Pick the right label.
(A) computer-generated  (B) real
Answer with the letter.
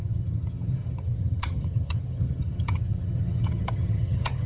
A